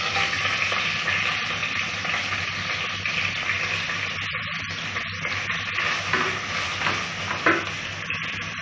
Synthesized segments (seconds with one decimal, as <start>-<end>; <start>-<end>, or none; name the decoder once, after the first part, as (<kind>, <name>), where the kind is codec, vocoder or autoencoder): none